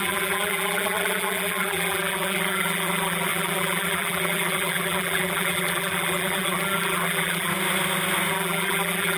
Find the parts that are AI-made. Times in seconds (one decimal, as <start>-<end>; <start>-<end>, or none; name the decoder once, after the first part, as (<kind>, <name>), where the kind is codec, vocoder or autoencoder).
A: 0.0-7.5 (vocoder, BigVGAN v2); 8.3-9.2